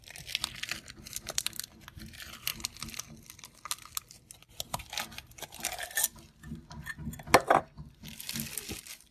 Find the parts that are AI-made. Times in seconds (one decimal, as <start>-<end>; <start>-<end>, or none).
0.0-2.5; 7.6-9.1